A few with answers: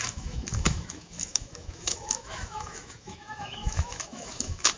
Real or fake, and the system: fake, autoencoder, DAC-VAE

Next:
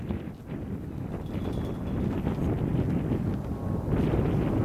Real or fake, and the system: real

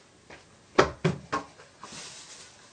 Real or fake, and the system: real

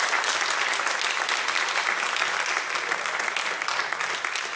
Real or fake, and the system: real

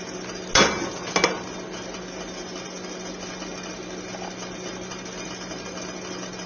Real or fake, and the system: real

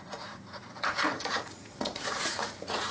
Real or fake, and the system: fake, vocoder, Vocos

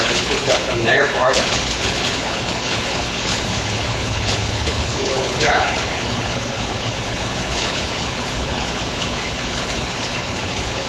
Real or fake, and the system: fake, codec, HILCodec